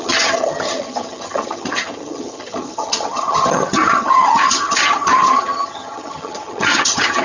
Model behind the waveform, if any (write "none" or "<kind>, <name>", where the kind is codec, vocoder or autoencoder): vocoder, HiFi-GAN